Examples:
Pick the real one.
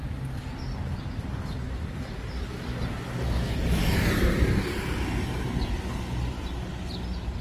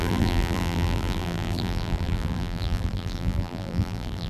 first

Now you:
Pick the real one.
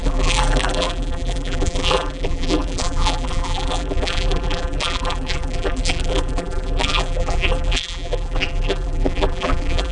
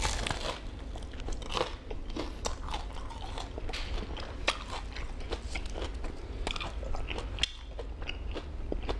second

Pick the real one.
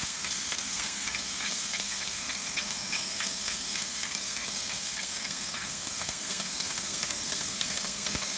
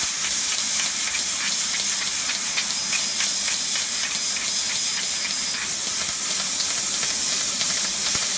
second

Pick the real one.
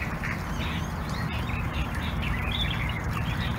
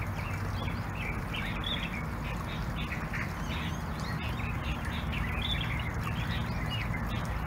second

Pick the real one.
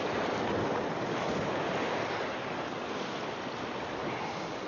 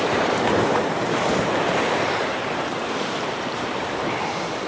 first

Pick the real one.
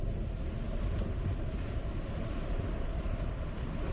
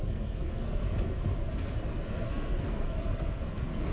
first